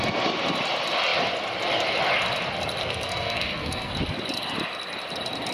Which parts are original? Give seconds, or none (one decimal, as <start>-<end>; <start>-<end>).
0.0-2.8; 3.9-5.5